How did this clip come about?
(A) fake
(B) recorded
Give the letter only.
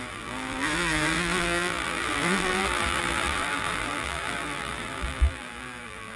A